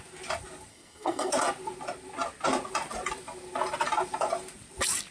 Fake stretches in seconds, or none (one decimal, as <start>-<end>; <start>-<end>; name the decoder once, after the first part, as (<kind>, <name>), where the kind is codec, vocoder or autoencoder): 0.7-1.3 (codec, SNAC)